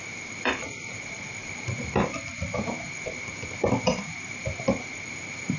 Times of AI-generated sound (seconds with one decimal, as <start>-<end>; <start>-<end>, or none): 0.0-5.6

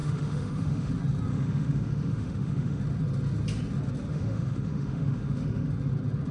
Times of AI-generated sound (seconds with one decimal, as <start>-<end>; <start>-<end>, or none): 0.0-0.9; 1.3-2.8; 4.1-5.7